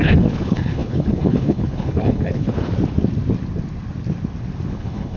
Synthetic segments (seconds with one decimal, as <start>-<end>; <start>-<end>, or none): 0.0-2.7; 4.7-5.2